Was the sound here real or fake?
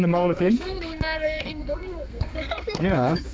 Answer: fake